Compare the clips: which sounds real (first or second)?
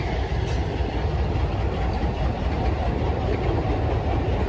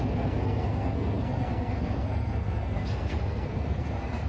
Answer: first